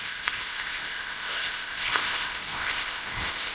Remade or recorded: remade